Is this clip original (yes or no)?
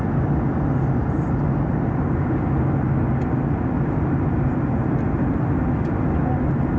yes